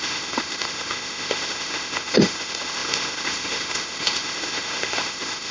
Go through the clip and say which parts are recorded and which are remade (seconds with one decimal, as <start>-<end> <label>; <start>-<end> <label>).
0.0-5.5 remade